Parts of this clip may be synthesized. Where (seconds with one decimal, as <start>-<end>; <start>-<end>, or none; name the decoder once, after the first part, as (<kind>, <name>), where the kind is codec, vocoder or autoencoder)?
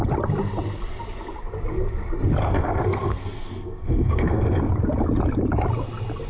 2.4-4.7 (codec, SNAC)